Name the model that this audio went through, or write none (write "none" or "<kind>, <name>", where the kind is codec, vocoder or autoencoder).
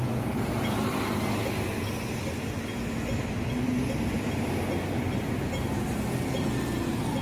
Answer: none